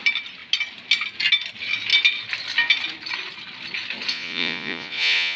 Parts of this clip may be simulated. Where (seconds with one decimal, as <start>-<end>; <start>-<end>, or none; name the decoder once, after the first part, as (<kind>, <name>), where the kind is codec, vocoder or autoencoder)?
4.1-5.4 (vocoder, Vocos)